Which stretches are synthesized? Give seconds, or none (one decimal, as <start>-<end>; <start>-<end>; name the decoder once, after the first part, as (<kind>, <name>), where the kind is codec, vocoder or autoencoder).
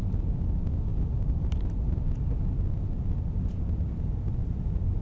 none